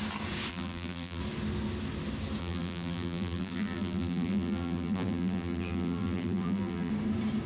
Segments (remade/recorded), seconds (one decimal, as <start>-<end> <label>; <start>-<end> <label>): 0.0-0.5 recorded; 0.5-1.2 remade; 1.2-2.4 recorded; 2.4-6.9 remade; 6.9-7.5 recorded